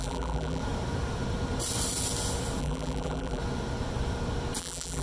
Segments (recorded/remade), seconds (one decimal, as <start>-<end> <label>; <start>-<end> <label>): 0.0-0.6 remade; 0.6-2.6 recorded; 2.6-3.4 remade; 3.4-4.6 recorded; 4.6-5.0 remade